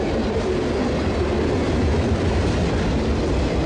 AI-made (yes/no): no